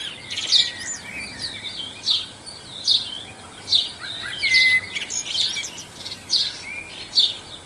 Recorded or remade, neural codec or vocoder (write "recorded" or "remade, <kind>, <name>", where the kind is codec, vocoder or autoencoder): recorded